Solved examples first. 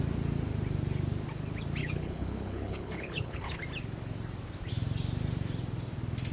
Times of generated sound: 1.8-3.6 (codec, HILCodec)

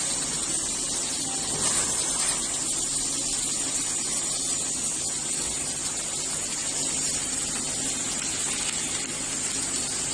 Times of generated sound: none

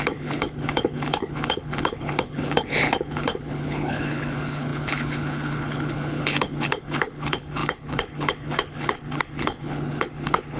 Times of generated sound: 0.0-10.6 (codec, HILCodec)

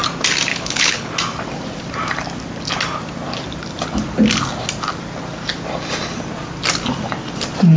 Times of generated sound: 0.5-1.1 (codec, HILCodec)